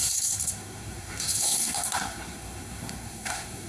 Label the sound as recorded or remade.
remade